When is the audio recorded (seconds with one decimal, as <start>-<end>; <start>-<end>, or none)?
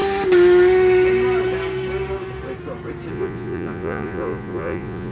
0.0-3.1